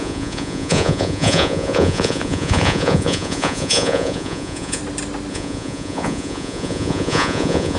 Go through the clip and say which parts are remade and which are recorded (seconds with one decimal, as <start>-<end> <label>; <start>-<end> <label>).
0.0-4.8 remade; 4.8-5.3 recorded; 5.3-7.8 remade